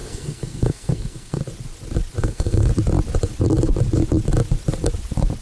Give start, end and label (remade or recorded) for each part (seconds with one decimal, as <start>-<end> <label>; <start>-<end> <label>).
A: 0.0-1.4 remade; 1.4-2.2 recorded; 2.2-2.7 remade; 2.7-5.4 recorded